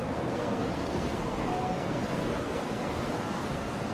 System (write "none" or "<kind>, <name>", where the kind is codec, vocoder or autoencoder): codec, SNAC